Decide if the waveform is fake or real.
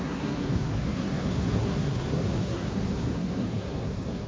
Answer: fake